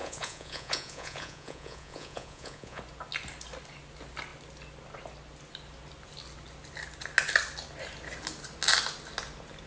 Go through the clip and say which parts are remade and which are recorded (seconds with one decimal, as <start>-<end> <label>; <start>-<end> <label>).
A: 0.0-2.8 remade; 2.8-9.7 recorded